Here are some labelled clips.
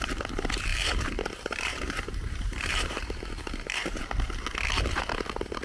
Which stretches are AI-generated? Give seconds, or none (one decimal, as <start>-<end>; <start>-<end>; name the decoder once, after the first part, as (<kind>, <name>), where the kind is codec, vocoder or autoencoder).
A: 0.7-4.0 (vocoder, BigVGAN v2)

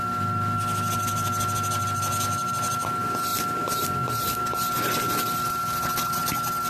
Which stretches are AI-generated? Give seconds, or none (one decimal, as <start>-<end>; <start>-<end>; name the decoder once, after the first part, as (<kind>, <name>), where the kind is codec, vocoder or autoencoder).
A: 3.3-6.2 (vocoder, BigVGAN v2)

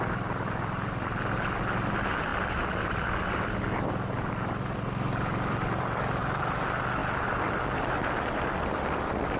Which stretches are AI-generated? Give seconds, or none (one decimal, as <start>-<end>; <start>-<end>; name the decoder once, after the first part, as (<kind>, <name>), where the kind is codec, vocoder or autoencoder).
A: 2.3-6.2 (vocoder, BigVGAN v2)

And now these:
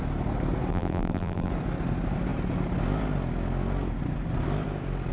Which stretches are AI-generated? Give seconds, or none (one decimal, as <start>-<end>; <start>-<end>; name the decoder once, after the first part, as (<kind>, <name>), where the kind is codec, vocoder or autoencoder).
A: 0.7-1.5 (vocoder, BigVGAN v2)

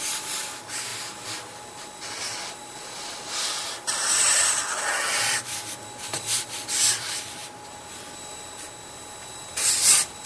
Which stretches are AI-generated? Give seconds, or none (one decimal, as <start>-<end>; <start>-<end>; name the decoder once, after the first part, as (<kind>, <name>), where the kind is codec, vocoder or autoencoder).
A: 0.0-7.4 (vocoder, BigVGAN v2); 8.9-10.3